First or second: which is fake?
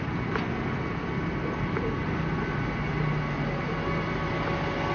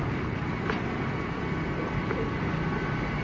second